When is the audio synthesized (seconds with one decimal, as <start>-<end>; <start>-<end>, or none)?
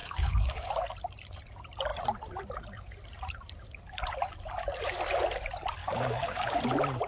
0.0-0.7; 5.8-6.6